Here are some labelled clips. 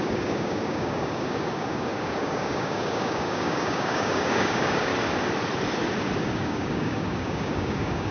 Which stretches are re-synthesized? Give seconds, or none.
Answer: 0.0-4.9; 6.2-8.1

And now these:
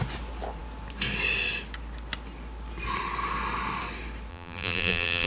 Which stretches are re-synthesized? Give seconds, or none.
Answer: 4.3-5.3

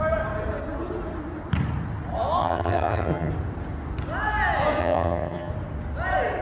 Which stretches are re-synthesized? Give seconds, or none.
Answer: 2.4-3.3; 4.8-5.5

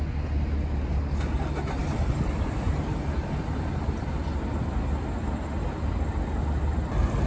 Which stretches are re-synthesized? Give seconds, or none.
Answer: none

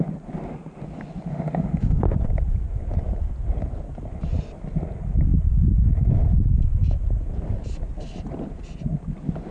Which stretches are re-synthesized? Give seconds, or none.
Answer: 1.3-2.0

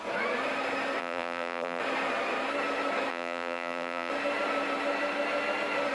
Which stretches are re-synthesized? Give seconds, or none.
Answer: 1.0-1.8; 3.1-4.1

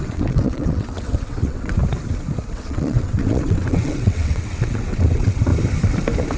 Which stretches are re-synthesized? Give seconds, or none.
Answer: 0.0-1.8; 2.5-5.5